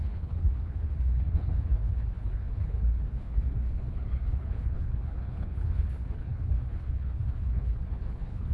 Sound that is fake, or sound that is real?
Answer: fake